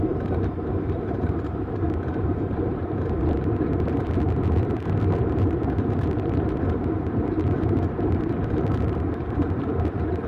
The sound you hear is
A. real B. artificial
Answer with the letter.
B